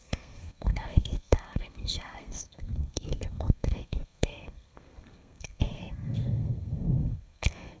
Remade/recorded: remade